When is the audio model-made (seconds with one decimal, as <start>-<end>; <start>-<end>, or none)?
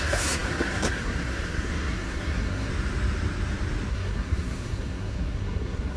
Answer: 0.0-2.7; 3.9-6.0